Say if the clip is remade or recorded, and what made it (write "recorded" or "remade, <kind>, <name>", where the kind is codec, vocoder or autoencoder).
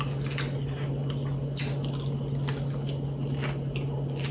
recorded